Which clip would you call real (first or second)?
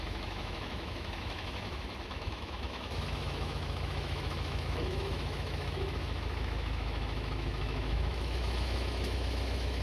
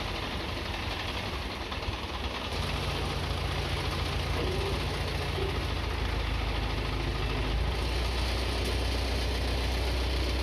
second